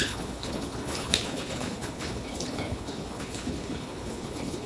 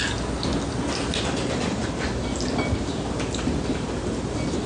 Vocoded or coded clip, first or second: first